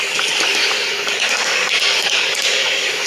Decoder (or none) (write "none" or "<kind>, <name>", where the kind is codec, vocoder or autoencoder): codec, DAC